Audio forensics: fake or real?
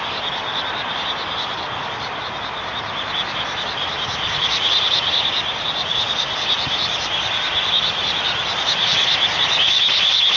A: real